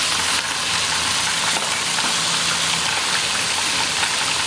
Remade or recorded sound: recorded